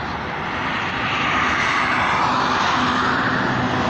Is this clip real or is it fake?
real